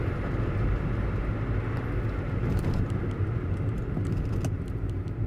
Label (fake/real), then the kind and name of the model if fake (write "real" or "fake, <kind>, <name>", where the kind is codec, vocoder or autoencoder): real